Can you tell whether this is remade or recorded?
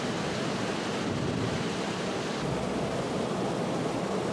recorded